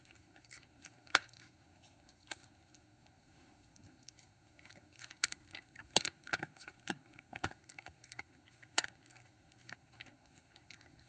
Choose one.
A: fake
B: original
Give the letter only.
A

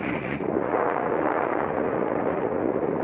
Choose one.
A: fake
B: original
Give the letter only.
A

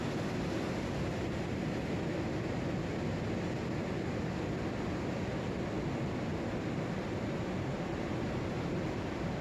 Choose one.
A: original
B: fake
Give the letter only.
A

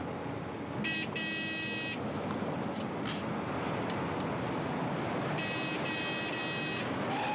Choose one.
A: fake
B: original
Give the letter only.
B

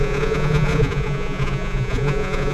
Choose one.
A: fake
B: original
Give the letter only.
A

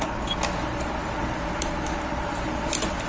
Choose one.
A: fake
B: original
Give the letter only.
A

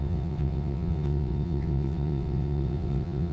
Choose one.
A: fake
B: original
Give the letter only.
A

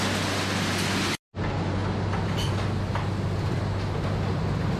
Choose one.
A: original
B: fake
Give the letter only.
A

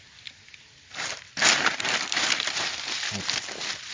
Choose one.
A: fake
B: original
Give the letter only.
B